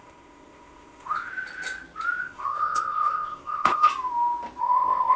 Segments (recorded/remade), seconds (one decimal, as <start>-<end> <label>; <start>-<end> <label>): 0.0-1.3 remade; 1.3-2.2 recorded; 2.2-3.9 remade; 3.9-4.6 recorded; 4.6-5.2 remade